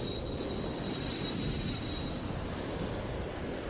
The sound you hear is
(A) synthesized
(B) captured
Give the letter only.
B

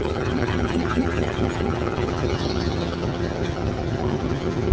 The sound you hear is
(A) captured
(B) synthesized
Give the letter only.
B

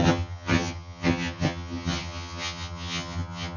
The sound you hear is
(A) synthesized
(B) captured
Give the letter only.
A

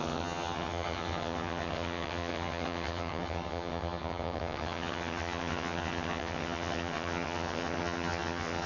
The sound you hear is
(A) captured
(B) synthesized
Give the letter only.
B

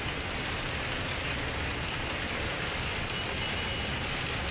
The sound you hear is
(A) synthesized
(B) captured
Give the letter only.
B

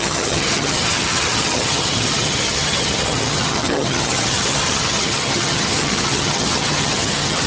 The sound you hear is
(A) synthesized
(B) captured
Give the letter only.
A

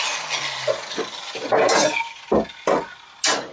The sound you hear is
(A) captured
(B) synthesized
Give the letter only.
A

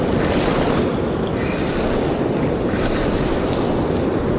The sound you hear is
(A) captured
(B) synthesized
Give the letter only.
A